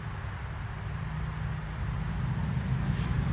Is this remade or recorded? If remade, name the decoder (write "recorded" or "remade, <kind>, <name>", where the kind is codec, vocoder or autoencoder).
recorded